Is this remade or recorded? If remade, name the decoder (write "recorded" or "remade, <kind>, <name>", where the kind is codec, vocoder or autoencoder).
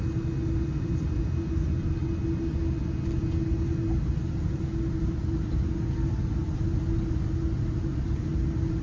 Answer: recorded